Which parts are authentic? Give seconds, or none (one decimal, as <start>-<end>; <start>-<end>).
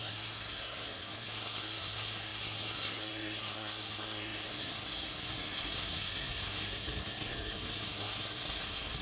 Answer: none